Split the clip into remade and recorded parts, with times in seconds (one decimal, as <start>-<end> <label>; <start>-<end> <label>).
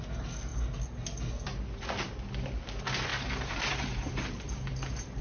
0.0-3.1 recorded; 3.1-5.2 remade